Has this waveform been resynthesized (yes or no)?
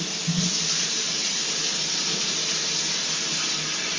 no